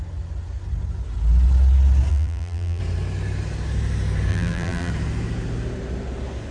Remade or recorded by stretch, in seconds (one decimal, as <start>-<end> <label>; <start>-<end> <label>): 0.0-2.1 recorded; 2.1-2.8 remade; 2.8-4.3 recorded; 4.3-4.9 remade; 4.9-6.5 recorded